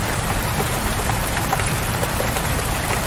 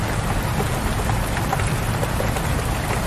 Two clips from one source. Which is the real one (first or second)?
second